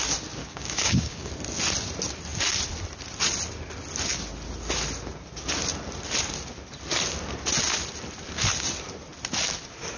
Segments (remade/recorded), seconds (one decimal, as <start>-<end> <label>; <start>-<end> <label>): 0.0-0.4 recorded; 0.4-1.3 remade; 1.3-10.0 recorded